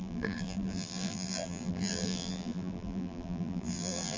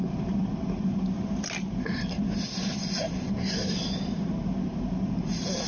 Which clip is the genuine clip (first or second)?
second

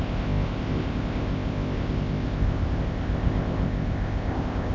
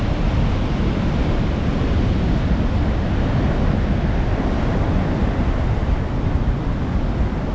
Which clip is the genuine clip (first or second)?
second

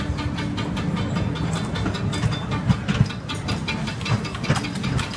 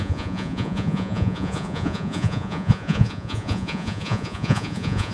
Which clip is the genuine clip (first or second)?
first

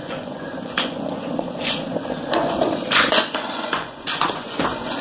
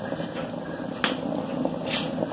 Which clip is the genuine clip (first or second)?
second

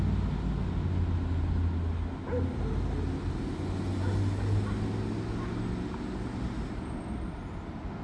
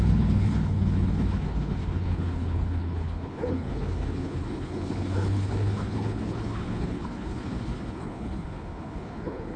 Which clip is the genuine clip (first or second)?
first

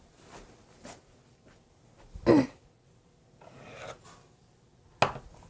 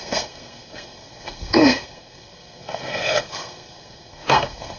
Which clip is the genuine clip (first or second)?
first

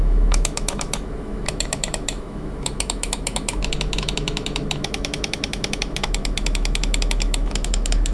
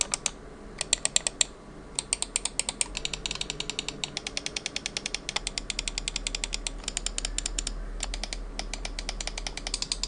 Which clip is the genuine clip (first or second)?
second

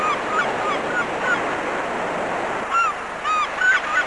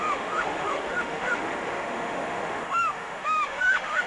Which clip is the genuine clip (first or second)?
first